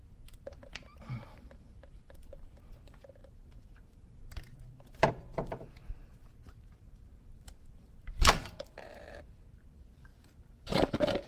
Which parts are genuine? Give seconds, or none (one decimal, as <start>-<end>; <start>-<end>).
none